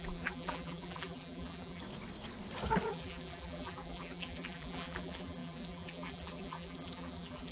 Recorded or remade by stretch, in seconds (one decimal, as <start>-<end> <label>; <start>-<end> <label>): 0.0-1.8 remade; 1.8-2.9 recorded; 2.9-7.5 remade